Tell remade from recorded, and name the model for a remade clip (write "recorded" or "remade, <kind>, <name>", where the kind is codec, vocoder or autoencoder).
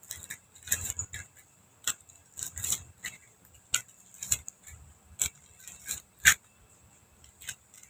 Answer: recorded